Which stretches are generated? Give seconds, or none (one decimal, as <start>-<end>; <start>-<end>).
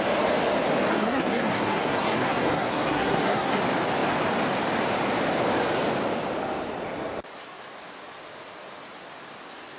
0.9-3.6